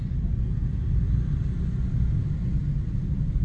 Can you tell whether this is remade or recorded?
recorded